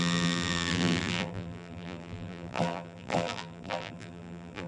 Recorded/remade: remade